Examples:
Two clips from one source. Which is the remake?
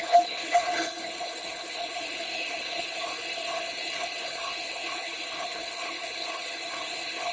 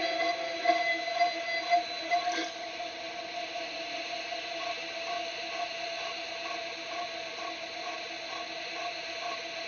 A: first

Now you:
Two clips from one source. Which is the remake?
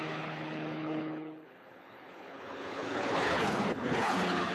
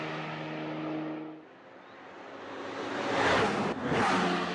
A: first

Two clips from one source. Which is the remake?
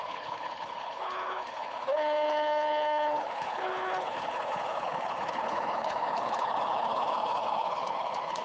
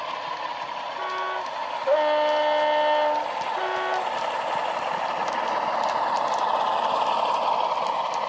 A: first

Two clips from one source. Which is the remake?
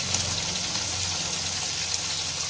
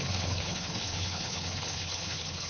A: second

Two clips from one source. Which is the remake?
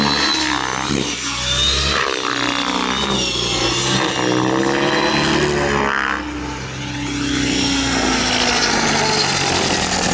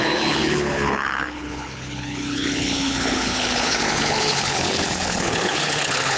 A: second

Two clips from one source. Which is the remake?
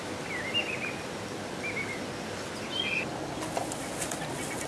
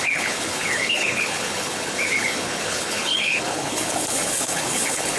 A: second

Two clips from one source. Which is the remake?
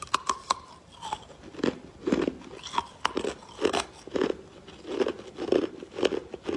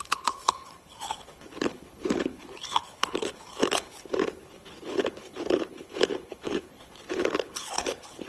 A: second